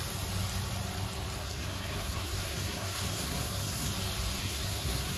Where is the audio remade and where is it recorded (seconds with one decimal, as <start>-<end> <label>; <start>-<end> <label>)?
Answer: 0.0-1.4 recorded; 1.4-3.9 remade; 3.9-4.4 recorded; 4.4-5.2 remade